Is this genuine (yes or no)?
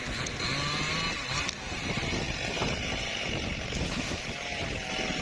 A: yes